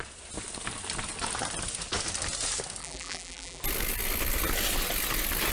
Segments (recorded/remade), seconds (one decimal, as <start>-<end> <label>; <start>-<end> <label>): 0.0-2.8 recorded; 2.8-3.6 remade; 3.6-5.5 recorded